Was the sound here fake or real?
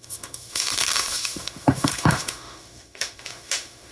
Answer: fake